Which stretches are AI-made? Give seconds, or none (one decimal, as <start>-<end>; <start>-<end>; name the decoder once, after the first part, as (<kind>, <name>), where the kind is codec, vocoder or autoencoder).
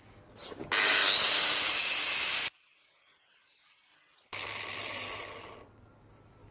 none